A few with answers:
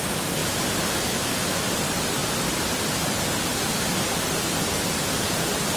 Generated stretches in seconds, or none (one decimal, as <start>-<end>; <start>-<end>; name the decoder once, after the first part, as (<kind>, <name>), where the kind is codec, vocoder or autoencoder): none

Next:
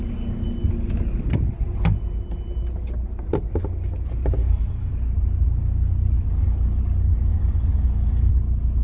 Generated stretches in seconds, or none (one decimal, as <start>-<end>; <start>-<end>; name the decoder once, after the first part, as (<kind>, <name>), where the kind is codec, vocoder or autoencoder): 4.4-4.9 (codec, DAC); 6.3-6.8; 7.3-8.3

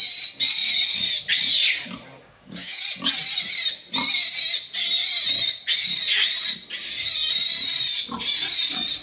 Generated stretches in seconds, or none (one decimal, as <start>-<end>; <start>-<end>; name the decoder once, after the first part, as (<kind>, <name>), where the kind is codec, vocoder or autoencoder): 2.2-2.8 (codec, DAC)

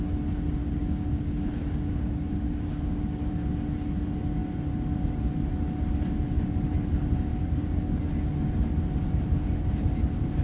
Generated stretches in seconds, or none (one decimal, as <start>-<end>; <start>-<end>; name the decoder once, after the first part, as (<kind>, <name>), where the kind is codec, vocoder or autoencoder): 0.6-3.3 (codec, DAC); 7.3-8.0

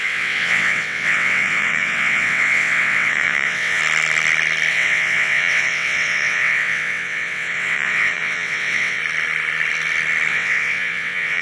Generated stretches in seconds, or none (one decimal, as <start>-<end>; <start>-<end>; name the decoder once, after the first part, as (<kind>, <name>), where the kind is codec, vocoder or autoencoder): 0.0-3.8 (vocoder, WaveNeXt); 4.7-9.0; 10.3-11.4

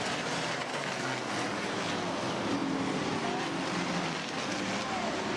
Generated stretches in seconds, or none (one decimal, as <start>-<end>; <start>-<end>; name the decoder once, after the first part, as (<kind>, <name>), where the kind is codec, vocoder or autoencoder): 0.7-1.3 (codec, SNAC)

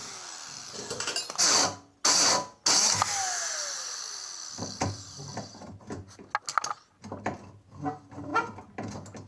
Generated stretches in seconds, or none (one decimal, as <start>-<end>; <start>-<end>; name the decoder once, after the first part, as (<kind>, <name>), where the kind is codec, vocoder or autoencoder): none